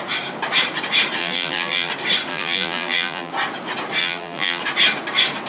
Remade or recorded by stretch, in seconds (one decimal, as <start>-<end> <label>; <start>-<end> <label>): 0.0-1.2 recorded; 1.2-1.9 remade; 1.9-2.3 recorded; 2.3-3.3 remade; 3.3-4.0 recorded; 4.0-4.6 remade; 4.6-5.5 recorded